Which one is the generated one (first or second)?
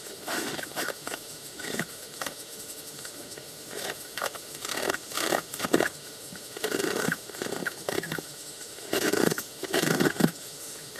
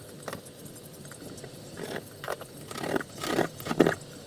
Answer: first